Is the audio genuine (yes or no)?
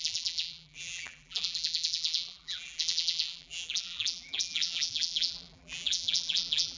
no